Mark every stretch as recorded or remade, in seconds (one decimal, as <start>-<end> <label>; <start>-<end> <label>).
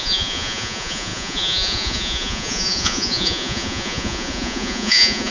0.0-5.3 remade